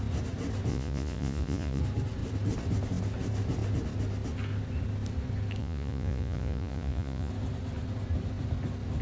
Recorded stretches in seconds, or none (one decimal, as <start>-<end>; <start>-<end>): 0.0-0.7; 1.8-5.6; 7.3-9.0